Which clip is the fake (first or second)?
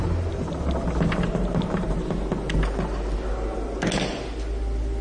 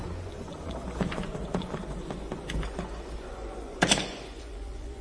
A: second